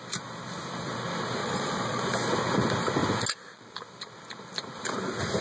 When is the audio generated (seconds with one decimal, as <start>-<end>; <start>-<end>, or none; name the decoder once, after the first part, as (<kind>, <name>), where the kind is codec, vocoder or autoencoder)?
1.4-2.0 (vocoder, Vocos)